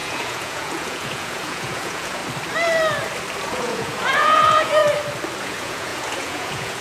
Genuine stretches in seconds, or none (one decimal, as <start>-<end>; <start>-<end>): 2.2-3.5; 4.8-5.4